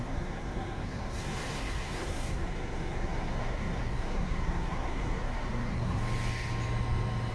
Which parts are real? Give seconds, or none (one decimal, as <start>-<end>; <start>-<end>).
6.0-7.3